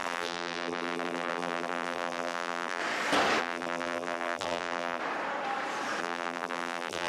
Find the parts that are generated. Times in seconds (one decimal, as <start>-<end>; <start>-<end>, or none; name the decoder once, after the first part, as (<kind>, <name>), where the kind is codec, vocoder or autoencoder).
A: 0.0-2.8 (vocoder, BigVGAN v2); 3.4-5.0; 6.0-7.1